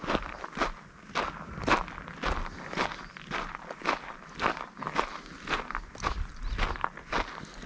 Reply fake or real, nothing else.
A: real